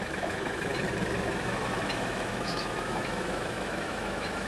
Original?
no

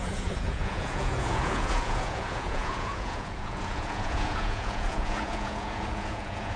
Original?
no